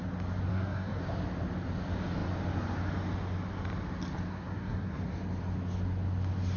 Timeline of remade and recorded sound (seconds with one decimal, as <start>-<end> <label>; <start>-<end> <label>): 0.0-0.5 recorded; 0.5-1.0 remade; 1.0-4.3 recorded; 4.3-5.0 remade; 5.0-6.6 recorded